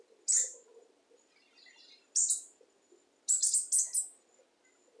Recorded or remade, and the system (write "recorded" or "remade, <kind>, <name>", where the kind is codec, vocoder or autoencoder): recorded